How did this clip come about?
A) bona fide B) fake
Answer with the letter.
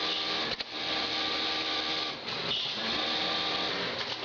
A